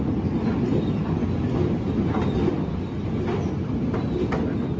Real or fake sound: real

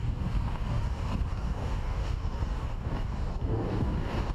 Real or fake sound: fake